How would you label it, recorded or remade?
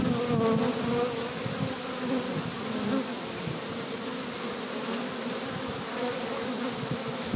recorded